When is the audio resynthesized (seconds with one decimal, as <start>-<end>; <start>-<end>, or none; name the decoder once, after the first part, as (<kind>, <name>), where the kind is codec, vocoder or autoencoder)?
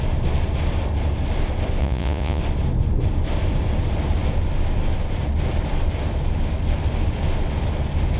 1.8-2.4 (vocoder, Vocos)